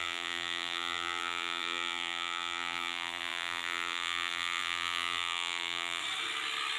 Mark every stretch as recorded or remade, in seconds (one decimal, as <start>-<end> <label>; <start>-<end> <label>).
0.0-6.0 remade; 6.0-6.8 recorded